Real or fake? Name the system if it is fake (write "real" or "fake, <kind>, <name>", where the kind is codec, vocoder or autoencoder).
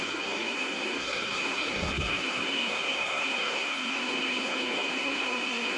fake, codec, SNAC